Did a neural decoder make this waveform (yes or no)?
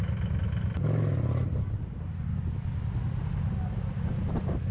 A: no